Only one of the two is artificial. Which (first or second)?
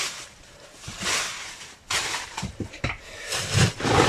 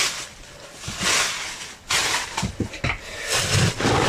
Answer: first